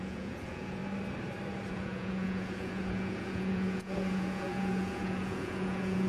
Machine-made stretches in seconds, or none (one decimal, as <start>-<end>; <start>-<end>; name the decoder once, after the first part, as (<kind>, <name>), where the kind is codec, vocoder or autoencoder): 0.0-0.8 (vocoder, Vocos); 1.7-6.1